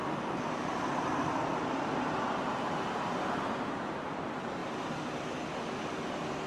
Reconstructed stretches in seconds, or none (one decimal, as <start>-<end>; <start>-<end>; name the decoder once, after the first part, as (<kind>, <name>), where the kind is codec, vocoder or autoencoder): none

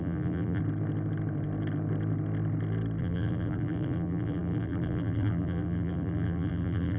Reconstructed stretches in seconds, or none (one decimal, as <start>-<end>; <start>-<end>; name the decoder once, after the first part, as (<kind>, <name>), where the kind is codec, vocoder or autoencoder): 0.0-0.6 (vocoder, BigVGAN v2); 3.0-7.0